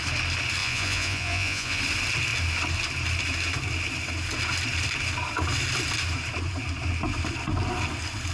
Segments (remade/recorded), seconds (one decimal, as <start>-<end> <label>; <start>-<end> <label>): 0.0-0.6 recorded; 0.6-1.8 remade; 1.8-8.3 recorded